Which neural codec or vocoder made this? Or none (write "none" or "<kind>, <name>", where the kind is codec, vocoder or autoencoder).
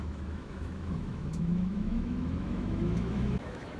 autoencoder, DAC-VAE